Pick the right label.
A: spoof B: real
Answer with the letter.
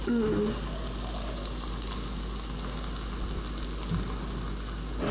B